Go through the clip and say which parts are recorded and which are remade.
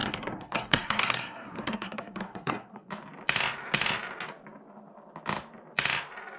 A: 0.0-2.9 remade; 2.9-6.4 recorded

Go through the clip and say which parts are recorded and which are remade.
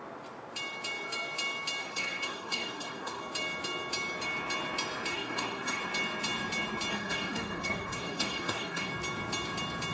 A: 0.0-1.8 recorded; 1.8-3.2 remade; 3.2-5.1 recorded; 5.1-5.8 remade; 5.8-6.9 recorded; 6.9-8.9 remade; 8.9-9.9 recorded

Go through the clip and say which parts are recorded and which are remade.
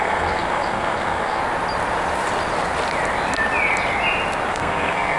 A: 0.0-1.4 remade; 1.4-4.5 recorded; 4.5-5.2 remade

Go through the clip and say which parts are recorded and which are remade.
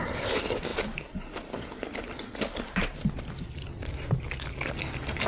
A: 0.0-5.3 recorded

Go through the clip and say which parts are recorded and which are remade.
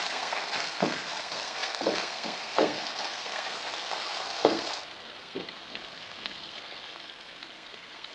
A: 0.0-8.1 remade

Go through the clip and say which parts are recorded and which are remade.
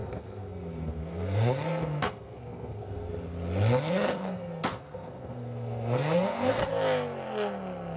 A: 0.0-3.1 remade; 3.1-3.9 recorded; 3.9-6.6 remade; 6.6-8.0 recorded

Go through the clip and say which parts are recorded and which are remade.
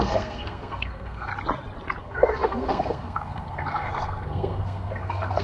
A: 0.0-1.3 remade; 1.3-2.0 recorded; 2.0-5.4 remade